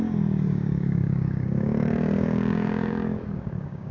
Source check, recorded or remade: remade